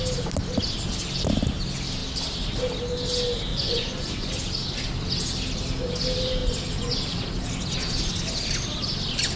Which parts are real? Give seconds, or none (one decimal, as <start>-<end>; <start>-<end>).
0.0-3.5; 4.3-9.4